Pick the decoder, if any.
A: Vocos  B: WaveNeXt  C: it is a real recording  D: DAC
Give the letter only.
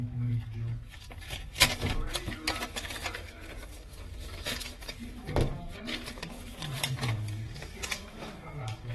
D